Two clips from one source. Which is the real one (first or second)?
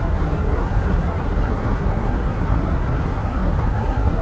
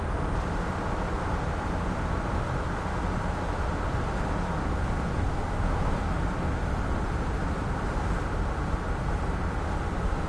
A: second